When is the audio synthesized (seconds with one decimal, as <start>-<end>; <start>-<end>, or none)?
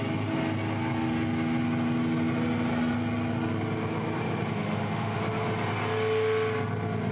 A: 4.5-5.2